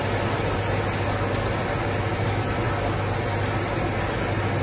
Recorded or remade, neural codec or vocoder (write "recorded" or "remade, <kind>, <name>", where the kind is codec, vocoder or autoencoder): recorded